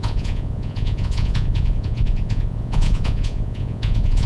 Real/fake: fake